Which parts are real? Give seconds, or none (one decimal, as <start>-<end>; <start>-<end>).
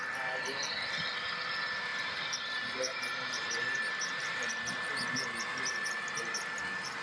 0.0-1.9; 4.5-7.0